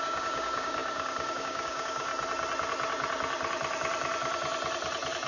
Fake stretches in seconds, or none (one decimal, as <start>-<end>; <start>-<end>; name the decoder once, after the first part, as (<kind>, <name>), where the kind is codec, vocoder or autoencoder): 0.0-2.1 (codec, DAC)